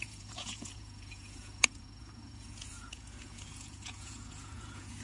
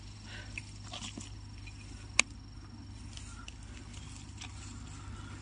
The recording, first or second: second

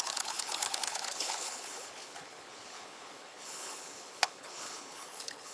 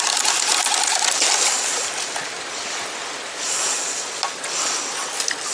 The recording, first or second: second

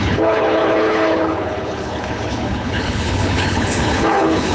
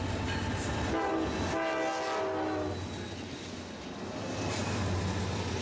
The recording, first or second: second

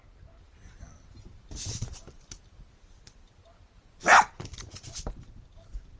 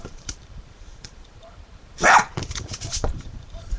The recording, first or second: first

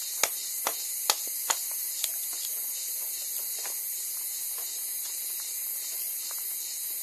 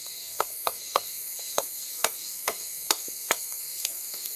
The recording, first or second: first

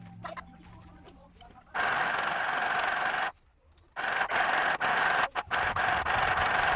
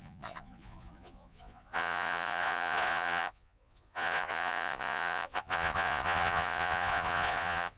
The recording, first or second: first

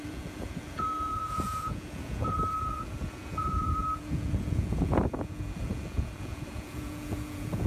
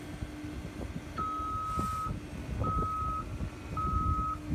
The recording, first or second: second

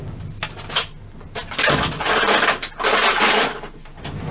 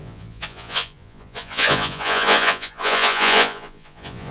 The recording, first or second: first